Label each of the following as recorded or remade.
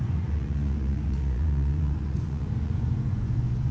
remade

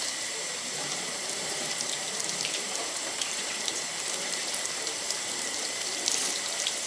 remade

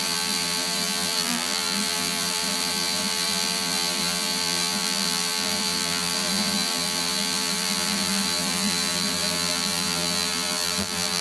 remade